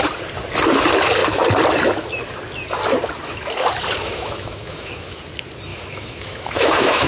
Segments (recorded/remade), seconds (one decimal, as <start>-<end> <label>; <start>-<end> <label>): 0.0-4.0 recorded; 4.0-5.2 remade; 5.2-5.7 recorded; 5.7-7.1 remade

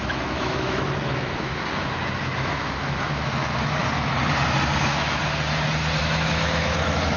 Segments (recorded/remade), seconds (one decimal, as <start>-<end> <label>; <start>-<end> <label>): 0.0-3.8 remade; 3.8-4.8 recorded; 4.8-5.2 remade; 5.2-6.0 recorded; 6.0-7.2 remade

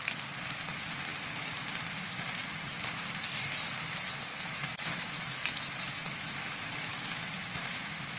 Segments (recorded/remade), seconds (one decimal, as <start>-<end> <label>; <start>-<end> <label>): 0.0-4.3 recorded; 4.3-8.2 remade

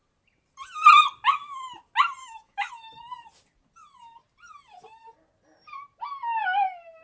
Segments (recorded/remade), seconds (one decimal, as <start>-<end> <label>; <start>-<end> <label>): 0.0-2.2 recorded; 2.2-2.7 remade; 2.7-7.0 recorded